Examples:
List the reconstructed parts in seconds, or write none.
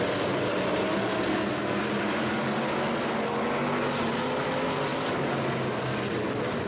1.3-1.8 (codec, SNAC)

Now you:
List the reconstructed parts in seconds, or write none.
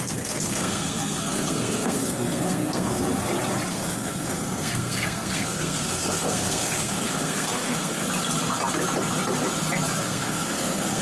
0.0-3.0 (codec, SNAC); 3.7-8.0; 10.0-11.0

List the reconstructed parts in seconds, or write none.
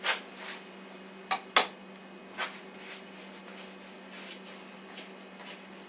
none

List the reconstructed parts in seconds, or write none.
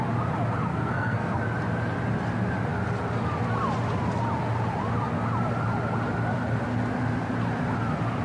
0.7-1.4 (codec, SNAC)